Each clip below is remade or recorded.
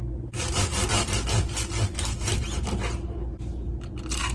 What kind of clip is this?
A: recorded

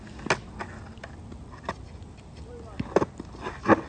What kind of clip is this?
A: recorded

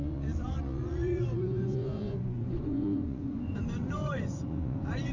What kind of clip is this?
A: remade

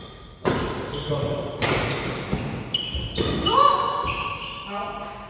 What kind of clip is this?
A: recorded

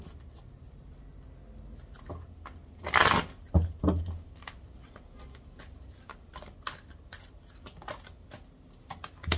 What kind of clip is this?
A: recorded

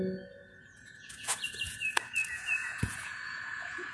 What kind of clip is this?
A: remade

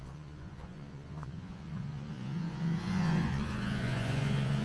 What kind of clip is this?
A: remade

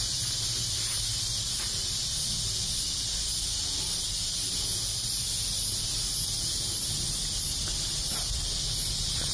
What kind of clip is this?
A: recorded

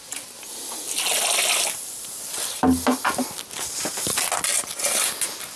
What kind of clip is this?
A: recorded